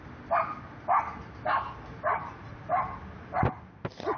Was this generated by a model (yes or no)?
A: no